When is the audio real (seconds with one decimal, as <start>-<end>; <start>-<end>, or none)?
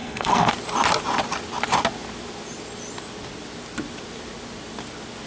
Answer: 0.5-5.3